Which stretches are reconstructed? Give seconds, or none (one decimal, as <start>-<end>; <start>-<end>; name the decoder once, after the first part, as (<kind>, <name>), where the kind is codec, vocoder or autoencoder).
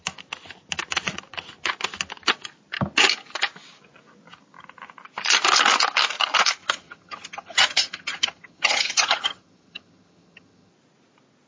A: 6.6-10.7 (vocoder, HiFi-GAN)